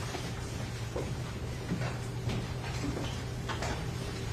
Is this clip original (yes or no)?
no